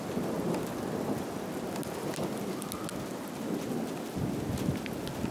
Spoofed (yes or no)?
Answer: no